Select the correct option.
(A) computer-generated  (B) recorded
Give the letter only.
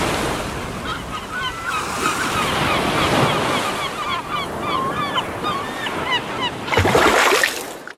B